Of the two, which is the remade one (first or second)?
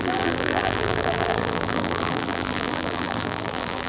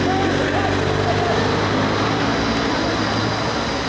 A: first